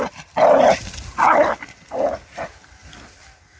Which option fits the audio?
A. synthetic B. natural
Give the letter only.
B